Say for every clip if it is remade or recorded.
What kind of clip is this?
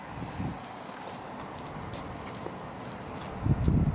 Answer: recorded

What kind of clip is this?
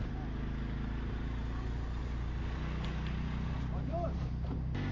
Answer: recorded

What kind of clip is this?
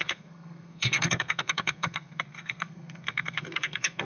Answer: remade